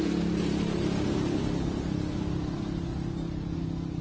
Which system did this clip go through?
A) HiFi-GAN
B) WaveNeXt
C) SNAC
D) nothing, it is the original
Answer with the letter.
D